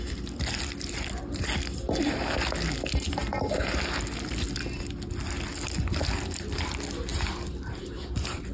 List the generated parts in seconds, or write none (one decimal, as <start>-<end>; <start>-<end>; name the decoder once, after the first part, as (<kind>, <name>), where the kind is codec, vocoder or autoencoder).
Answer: 7.1-8.5 (vocoder, BigVGAN v2)